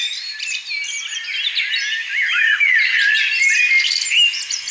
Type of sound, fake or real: real